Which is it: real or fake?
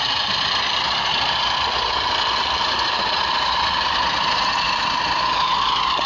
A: fake